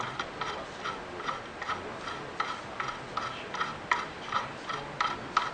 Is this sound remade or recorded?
recorded